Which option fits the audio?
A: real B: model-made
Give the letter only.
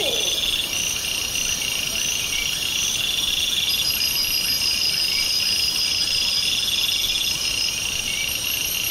A